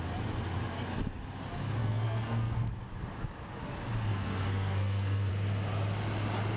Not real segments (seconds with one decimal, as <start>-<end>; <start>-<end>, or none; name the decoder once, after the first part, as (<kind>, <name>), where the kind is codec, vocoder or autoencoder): 1.8-2.7 (codec, SNAC); 4.1-5.3